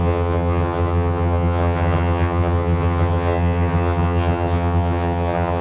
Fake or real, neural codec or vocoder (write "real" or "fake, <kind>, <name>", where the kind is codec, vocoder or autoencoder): fake, vocoder, HiFi-GAN